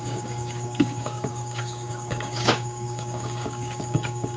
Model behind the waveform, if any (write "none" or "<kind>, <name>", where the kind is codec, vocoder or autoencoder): codec, DAC